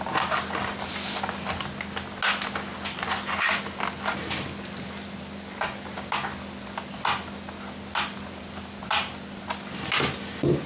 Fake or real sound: real